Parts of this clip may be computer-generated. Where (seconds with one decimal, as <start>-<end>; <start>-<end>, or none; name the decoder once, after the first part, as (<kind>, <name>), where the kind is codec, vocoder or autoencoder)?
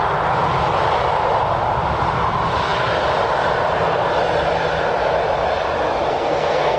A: 6.1-6.8 (codec, SNAC)